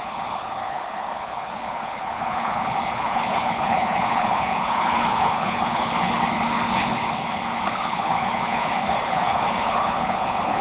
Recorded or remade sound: remade